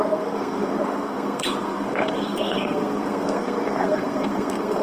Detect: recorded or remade remade